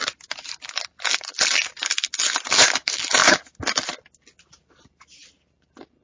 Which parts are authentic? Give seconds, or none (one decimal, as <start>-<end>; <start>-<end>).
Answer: 0.0-6.0